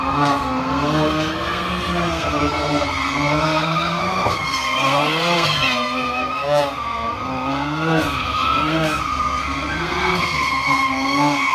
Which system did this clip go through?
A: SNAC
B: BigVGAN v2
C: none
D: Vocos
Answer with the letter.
A